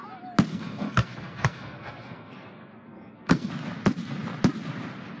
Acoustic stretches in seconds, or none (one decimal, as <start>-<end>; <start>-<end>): 0.0-0.5; 3.5-5.2